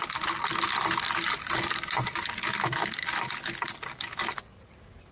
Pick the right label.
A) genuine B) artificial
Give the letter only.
A